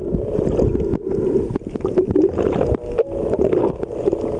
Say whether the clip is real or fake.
real